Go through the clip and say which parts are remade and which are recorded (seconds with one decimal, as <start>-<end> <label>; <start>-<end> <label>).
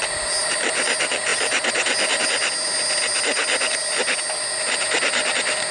0.0-5.7 recorded